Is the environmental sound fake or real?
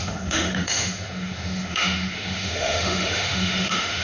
fake